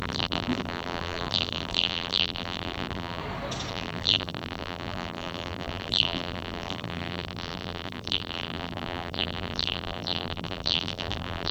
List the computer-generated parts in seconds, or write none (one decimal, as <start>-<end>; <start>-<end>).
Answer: 0.0-3.2; 3.7-11.5